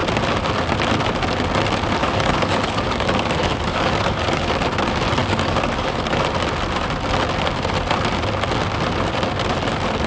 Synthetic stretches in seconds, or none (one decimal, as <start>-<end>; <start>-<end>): 2.0-4.5; 5.2-6.2